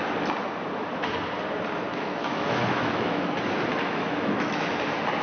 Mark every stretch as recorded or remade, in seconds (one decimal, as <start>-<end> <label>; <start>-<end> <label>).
0.0-1.9 recorded; 1.9-3.4 remade; 3.4-3.8 recorded; 3.8-4.7 remade; 4.7-5.2 recorded